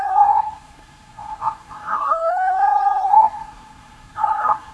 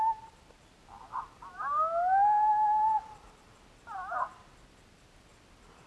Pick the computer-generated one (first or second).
first